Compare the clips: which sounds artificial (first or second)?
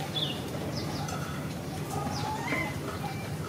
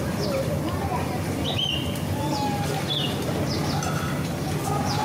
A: first